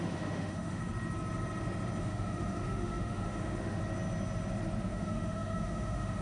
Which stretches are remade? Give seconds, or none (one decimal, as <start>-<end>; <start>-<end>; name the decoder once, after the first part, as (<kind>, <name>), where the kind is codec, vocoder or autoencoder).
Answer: 0.0-0.8 (autoencoder, DAC-VAE); 2.0-3.8; 4.8-6.2